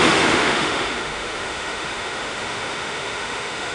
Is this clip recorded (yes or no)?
no